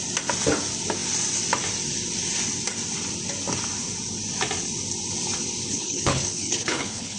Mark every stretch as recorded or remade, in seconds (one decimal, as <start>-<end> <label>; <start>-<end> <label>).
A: 0.0-5.7 recorded; 5.7-7.2 remade